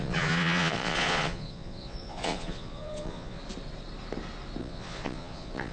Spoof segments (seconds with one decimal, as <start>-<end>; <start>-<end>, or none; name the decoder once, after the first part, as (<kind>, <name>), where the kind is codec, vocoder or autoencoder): 0.0-3.4 (vocoder, Vocos); 4.6-5.7